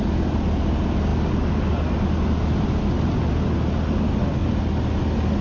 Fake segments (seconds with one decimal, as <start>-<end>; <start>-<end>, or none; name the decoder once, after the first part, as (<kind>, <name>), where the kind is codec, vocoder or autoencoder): none